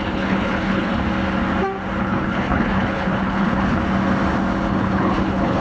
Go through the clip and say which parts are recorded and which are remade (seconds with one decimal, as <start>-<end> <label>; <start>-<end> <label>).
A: 0.0-1.0 remade; 1.0-2.0 recorded; 2.0-3.8 remade; 3.8-4.7 recorded; 4.7-5.6 remade